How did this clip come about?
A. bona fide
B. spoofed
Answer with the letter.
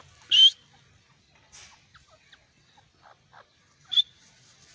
A